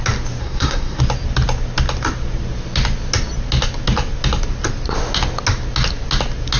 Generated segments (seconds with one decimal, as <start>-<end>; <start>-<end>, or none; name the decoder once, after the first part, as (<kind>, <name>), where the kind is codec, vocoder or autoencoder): 0.4-1.0 (codec, SNAC)